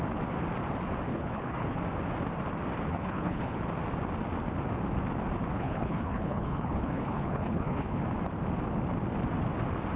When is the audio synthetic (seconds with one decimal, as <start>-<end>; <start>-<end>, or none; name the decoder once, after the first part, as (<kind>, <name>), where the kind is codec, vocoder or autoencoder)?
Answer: 1.1-1.8 (codec, HILCodec); 2.9-3.6; 5.5-8.0